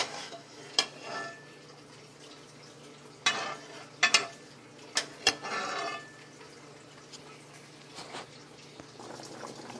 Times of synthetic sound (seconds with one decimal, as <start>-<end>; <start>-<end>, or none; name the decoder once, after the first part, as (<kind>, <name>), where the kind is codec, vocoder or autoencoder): 0.0-0.6 (autoencoder, DAC-VAE)